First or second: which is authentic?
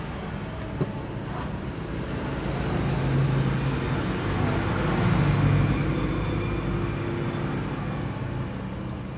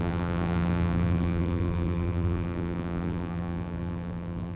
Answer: first